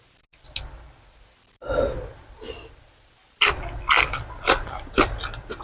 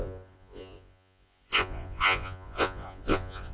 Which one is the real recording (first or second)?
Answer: first